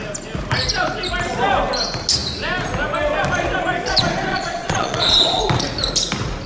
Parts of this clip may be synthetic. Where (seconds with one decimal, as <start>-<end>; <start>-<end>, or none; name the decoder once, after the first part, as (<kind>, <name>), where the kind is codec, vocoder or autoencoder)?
4.3-5.4 (vocoder, Vocos)